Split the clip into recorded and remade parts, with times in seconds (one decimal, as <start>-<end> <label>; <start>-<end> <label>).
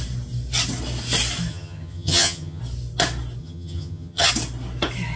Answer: 0.0-1.5 recorded; 1.5-2.6 remade; 2.6-3.4 recorded; 3.4-4.3 remade; 4.3-5.2 recorded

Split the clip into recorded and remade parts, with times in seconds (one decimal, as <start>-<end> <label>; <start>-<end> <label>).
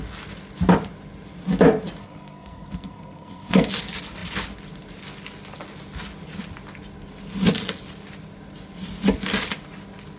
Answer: 0.0-2.0 recorded; 2.0-3.7 remade; 3.7-10.2 recorded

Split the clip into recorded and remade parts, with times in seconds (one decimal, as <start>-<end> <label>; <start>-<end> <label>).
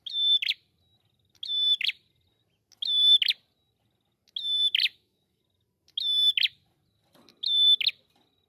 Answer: 0.0-4.8 recorded; 4.8-5.4 remade; 5.4-8.5 recorded